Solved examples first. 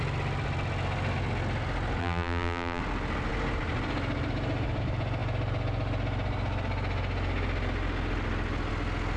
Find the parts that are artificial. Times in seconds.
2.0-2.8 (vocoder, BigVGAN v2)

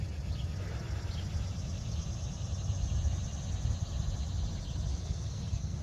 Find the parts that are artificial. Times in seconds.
4.9-5.8 (codec, SNAC)

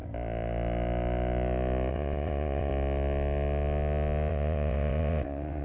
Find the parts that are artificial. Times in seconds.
1.9-2.7 (vocoder, WaveNeXt); 4.3-5.6